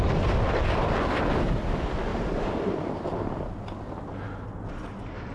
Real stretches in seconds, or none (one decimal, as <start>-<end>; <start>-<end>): 0.0-2.1; 3.4-5.3